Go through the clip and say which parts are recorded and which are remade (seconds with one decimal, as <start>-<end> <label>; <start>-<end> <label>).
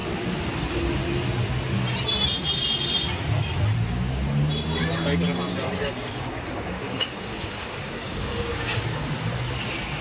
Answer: 0.0-5.5 recorded; 5.5-9.1 remade; 9.1-10.0 recorded